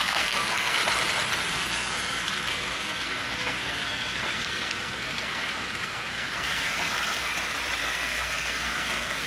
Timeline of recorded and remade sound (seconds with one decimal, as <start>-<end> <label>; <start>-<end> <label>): 0.0-0.8 remade; 0.8-1.5 recorded; 1.5-7.3 remade; 7.3-7.8 recorded; 7.8-9.3 remade